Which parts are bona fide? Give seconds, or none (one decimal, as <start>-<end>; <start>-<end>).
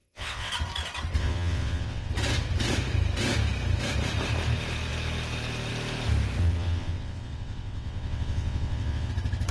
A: 0.5-1.2; 2.1-6.4; 9.1-9.5